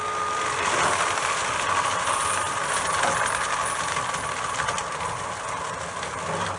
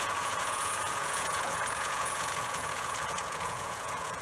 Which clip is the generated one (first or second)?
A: second